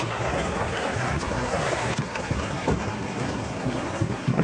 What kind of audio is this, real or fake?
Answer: fake